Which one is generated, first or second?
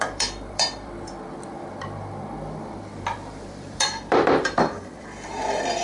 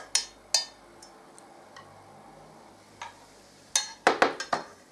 first